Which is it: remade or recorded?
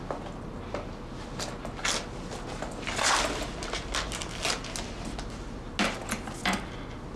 recorded